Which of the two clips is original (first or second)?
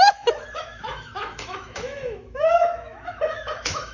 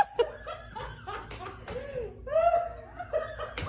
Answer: second